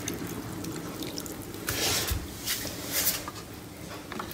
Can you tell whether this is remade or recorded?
recorded